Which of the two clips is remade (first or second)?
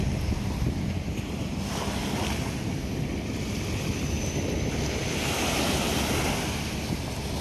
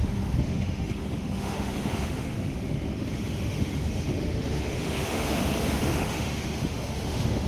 second